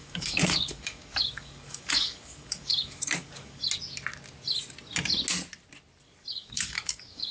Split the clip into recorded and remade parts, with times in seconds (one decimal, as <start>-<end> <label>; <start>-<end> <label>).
0.0-3.6 remade; 3.6-6.3 recorded; 6.3-7.3 remade